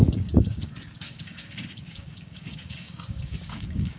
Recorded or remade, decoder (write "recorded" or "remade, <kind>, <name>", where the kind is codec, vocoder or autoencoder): remade, codec, DAC